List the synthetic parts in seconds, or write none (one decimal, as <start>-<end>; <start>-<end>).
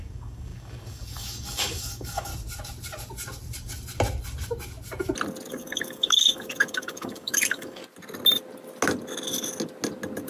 0.0-2.3; 5.5-7.8